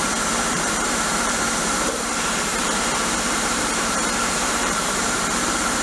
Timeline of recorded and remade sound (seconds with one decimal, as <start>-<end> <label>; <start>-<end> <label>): 0.0-5.8 remade